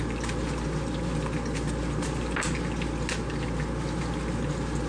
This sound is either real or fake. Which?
real